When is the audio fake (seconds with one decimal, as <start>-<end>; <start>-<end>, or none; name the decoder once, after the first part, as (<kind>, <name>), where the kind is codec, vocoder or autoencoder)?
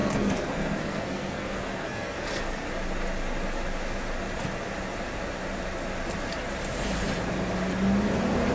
0.0-2.7 (codec, SNAC)